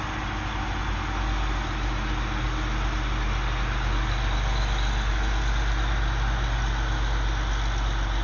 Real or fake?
real